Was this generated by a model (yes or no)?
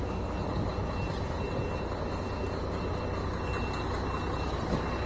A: no